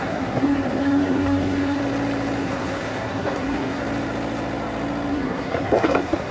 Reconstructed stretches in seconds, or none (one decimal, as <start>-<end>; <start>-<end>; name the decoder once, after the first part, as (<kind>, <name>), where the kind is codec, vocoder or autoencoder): 0.0-1.8 (codec, SNAC); 2.4-3.8; 5.1-6.3